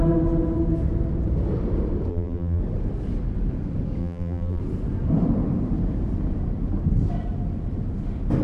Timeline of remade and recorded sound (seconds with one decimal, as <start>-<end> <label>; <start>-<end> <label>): 0.0-2.1 recorded; 2.1-2.6 remade; 2.6-4.0 recorded; 4.0-4.6 remade; 4.6-8.4 recorded